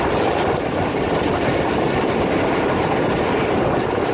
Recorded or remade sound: recorded